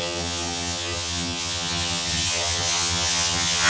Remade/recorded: remade